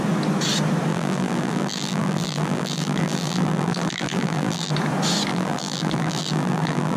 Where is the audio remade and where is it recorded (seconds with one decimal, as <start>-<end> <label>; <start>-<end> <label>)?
0.0-0.9 recorded; 0.9-4.7 remade; 4.7-5.3 recorded; 5.3-7.0 remade